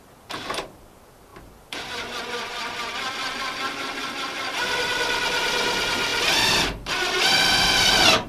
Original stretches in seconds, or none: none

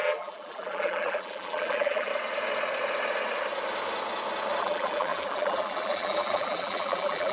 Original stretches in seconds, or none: 2.1-4.6

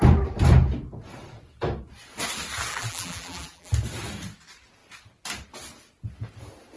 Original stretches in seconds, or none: 0.0-2.7; 3.7-6.8

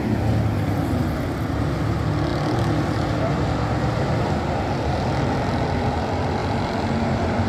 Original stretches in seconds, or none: 0.0-6.4

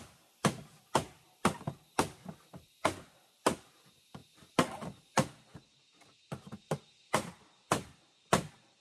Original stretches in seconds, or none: 0.0-8.8

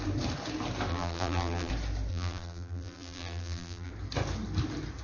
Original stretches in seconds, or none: 0.0-0.9; 1.7-2.1; 3.9-5.0